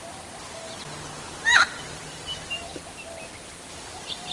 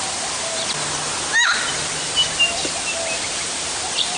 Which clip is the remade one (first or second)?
first